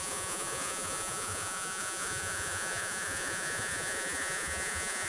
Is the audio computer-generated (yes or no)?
yes